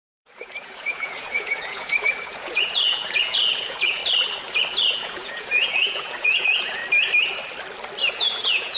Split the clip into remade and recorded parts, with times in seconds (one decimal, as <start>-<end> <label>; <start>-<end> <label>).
0.0-4.0 remade; 4.0-4.9 recorded; 4.9-6.8 remade; 6.8-8.1 recorded; 8.1-8.8 remade

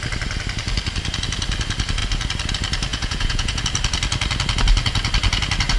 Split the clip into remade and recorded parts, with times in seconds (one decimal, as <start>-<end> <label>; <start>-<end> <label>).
0.0-2.9 recorded; 2.9-3.6 remade; 3.6-5.8 recorded

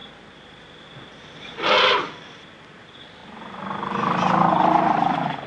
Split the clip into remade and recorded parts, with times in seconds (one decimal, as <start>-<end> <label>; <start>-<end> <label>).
0.0-5.5 recorded

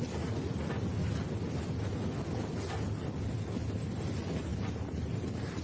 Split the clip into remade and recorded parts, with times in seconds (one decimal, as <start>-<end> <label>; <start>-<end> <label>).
0.0-5.6 recorded

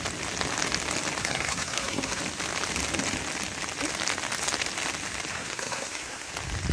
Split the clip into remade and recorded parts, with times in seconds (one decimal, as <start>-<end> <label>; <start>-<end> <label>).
0.0-1.2 recorded; 1.2-2.2 remade; 2.2-5.3 recorded; 5.3-6.3 remade; 6.3-6.7 recorded